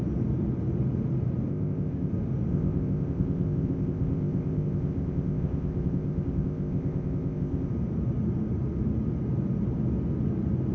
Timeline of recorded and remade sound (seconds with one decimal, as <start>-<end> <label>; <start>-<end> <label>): 0.0-1.5 recorded; 1.5-2.1 remade; 2.1-2.5 recorded; 2.5-7.7 remade; 7.7-10.7 recorded